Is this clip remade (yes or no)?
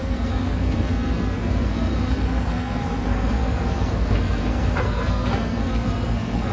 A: yes